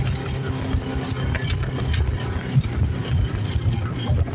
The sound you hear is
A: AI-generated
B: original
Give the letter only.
B